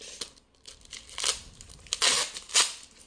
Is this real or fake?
real